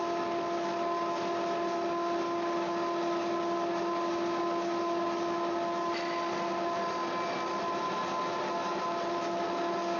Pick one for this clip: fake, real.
real